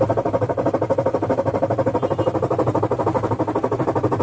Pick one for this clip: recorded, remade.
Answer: recorded